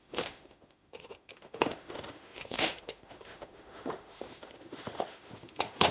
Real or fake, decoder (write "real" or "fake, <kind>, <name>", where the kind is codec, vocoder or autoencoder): fake, autoencoder, DAC-VAE